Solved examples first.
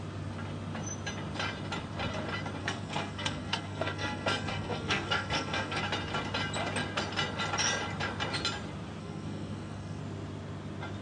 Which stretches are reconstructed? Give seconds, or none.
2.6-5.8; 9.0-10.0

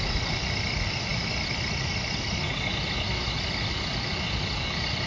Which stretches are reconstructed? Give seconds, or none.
none

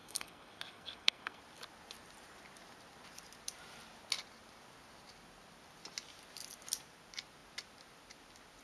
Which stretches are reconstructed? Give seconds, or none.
0.0-1.4

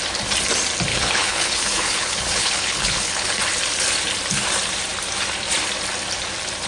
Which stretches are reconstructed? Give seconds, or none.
0.9-3.3